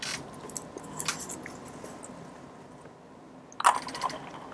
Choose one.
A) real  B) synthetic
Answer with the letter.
A